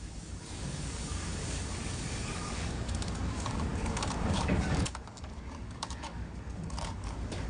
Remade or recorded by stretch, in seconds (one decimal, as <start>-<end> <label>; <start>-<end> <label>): 0.0-7.5 remade